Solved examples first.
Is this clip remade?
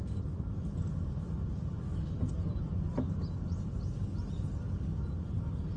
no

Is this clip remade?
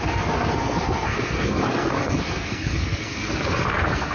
yes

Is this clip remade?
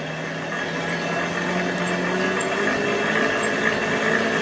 no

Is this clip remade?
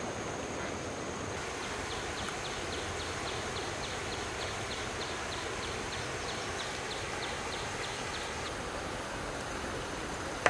no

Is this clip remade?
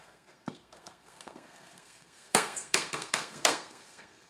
yes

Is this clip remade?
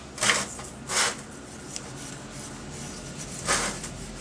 no